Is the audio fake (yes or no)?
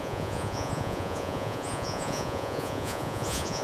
yes